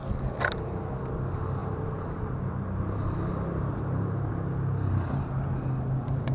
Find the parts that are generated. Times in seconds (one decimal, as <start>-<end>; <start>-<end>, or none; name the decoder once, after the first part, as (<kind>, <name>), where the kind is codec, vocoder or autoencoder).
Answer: 1.6-4.3 (vocoder, BigVGAN v2)